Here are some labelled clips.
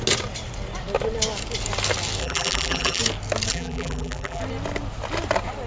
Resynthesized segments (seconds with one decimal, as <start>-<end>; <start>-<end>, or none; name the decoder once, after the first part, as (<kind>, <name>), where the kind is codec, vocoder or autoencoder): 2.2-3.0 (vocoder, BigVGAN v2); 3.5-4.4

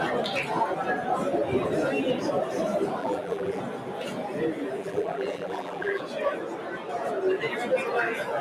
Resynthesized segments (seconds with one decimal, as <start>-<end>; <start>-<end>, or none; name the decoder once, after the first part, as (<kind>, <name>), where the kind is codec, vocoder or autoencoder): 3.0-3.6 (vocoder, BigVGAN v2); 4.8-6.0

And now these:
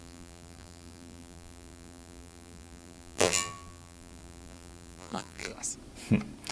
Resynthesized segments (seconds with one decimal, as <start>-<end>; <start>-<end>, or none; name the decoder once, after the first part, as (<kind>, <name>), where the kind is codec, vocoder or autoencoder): 0.0-5.5 (vocoder, BigVGAN v2)

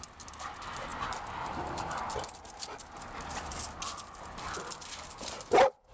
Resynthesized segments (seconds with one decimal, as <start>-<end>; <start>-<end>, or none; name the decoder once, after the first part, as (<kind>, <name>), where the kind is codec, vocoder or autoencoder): none